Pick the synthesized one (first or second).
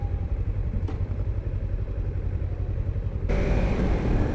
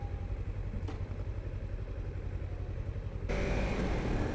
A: first